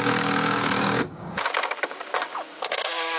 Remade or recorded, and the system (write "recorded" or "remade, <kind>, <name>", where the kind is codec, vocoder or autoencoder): remade, codec, DAC